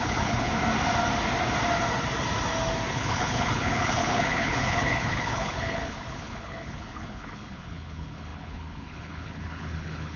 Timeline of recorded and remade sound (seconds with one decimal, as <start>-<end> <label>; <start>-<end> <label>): 0.0-0.5 remade; 0.5-2.9 recorded; 2.9-10.2 remade